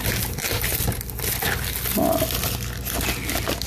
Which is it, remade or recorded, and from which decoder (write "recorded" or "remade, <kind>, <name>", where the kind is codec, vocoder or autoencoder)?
recorded